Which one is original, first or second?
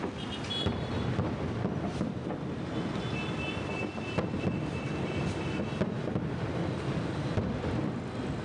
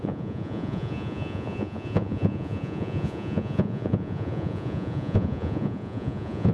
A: first